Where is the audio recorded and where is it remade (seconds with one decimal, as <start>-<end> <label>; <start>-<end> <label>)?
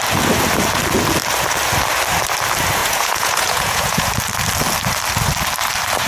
0.0-2.8 recorded; 2.8-4.1 remade; 4.1-6.1 recorded